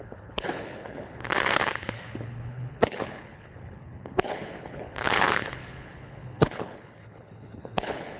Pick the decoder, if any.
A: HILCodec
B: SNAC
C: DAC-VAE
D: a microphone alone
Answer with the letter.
A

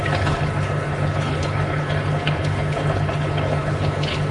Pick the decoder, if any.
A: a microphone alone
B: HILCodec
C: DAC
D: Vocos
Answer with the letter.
B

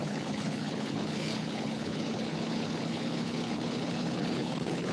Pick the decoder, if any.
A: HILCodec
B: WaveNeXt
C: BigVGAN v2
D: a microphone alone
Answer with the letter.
A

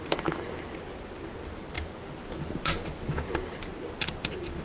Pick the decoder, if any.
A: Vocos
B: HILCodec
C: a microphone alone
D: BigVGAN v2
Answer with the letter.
C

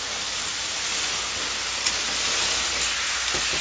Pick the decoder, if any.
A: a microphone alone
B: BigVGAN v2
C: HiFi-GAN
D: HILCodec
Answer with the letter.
A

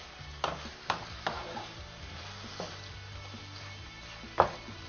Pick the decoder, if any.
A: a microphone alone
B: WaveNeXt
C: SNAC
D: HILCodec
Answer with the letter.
A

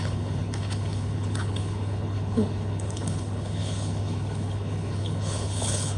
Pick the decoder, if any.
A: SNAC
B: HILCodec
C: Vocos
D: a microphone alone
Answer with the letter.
B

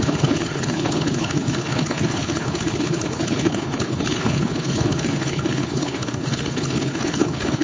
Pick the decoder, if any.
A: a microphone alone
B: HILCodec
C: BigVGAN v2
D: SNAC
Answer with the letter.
B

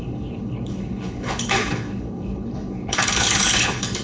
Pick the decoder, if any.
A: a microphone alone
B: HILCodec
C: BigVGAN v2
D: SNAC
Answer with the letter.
B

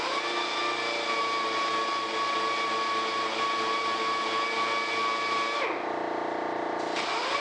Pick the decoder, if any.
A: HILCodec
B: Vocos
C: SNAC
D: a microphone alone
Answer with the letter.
D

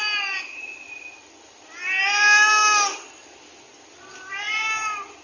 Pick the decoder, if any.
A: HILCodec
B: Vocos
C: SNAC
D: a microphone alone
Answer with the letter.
D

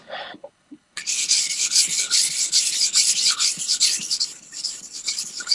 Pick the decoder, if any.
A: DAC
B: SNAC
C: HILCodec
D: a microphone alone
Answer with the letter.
C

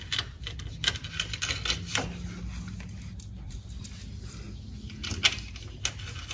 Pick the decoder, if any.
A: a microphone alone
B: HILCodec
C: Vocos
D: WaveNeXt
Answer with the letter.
A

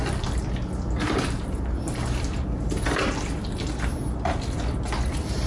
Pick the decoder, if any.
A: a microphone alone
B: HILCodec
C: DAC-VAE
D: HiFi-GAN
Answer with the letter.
A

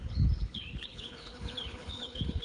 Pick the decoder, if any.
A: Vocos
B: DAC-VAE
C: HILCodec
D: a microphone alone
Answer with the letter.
C